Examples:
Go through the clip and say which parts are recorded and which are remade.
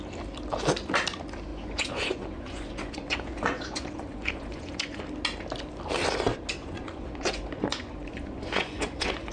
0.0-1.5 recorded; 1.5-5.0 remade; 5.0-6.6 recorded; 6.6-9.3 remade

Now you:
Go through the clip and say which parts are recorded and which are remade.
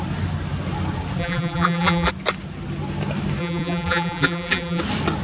0.0-1.2 recorded; 1.2-2.1 remade; 2.1-3.4 recorded; 3.4-4.8 remade; 4.8-5.2 recorded